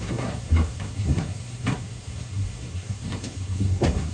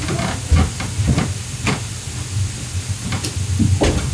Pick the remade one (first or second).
first